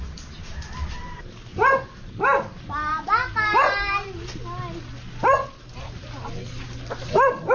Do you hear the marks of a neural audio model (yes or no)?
no